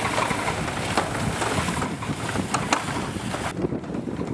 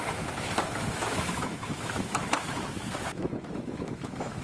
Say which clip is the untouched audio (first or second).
first